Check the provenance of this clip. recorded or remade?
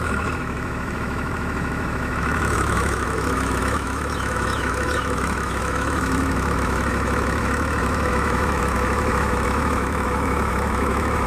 remade